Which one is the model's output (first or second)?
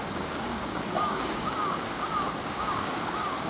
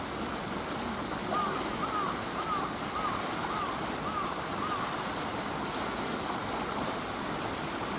first